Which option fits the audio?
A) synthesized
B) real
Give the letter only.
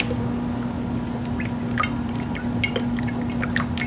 B